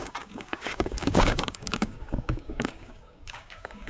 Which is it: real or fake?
fake